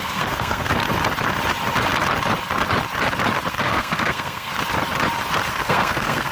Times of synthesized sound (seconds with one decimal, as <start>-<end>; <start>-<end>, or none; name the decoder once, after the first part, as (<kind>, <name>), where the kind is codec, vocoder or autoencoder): 0.0-0.8 (codec, SNAC); 3.5-4.5; 5.5-6.3